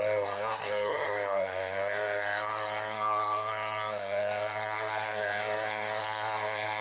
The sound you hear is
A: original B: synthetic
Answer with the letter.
B